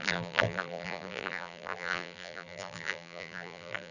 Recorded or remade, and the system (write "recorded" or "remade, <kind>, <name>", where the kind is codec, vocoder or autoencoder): remade, vocoder, BigVGAN v2